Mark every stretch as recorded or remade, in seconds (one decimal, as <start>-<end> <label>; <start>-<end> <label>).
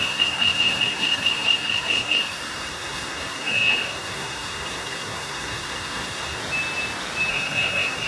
0.0-6.4 remade; 6.4-7.3 recorded; 7.3-8.1 remade